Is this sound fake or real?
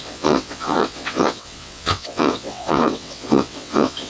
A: fake